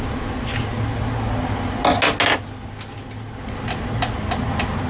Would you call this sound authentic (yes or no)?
yes